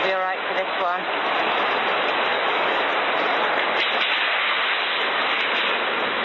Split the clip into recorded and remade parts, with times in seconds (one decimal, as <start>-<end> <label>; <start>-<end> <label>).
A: 0.0-2.3 recorded; 2.3-2.9 remade; 2.9-6.2 recorded